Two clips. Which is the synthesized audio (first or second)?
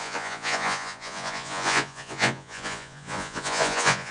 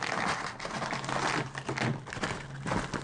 first